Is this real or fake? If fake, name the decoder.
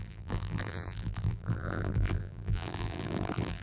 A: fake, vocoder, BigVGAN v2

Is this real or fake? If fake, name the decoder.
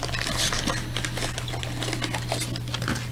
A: real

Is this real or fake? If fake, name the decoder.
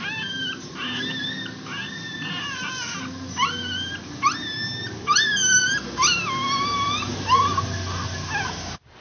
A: real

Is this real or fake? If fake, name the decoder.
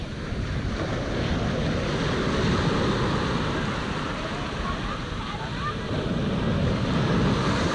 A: real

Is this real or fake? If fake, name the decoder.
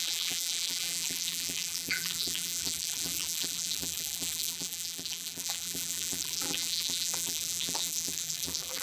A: fake, vocoder, BigVGAN v2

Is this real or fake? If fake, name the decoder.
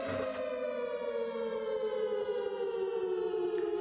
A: real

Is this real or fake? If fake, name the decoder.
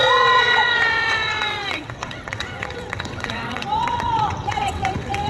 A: fake, vocoder, WaveNeXt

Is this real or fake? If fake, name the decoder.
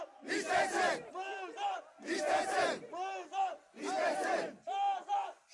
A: real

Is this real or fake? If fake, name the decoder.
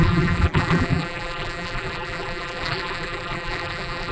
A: fake, vocoder, BigVGAN v2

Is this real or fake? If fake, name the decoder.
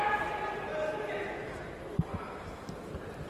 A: real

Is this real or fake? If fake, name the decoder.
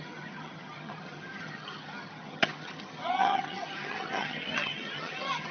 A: fake, vocoder, HiFi-GAN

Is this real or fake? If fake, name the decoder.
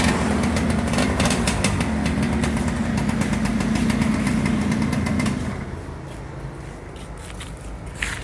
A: real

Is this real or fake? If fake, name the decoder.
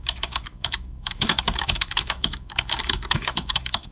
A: fake, autoencoder, DAC-VAE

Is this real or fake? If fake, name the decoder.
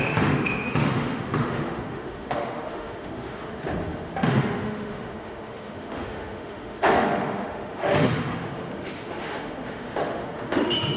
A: fake, autoencoder, DAC-VAE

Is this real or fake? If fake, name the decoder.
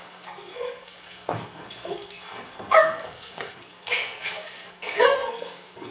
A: fake, codec, SNAC